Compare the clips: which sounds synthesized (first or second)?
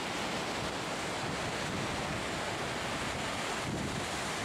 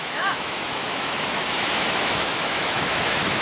second